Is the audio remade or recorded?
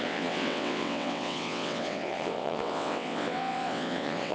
remade